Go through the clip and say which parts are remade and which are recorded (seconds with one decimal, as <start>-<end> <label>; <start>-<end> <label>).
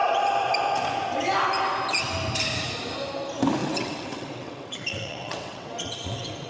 0.0-3.6 recorded; 3.6-6.5 remade